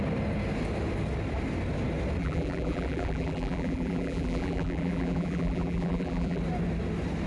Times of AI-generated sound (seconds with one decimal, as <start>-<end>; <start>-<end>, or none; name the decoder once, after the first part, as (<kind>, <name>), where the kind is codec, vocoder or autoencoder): 2.2-6.4 (vocoder, BigVGAN v2)